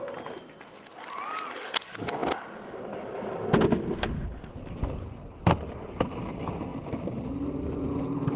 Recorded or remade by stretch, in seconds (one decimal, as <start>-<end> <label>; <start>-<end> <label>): 0.0-8.4 recorded